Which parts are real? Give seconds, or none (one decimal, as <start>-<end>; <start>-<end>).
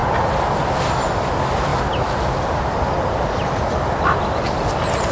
0.0-5.1